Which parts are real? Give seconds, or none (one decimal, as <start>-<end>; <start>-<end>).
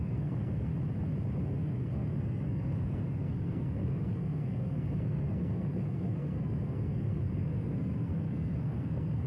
0.7-1.4